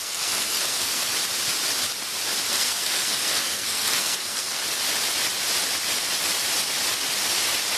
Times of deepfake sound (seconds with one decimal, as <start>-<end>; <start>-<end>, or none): 0.0-1.1; 2.5-4.6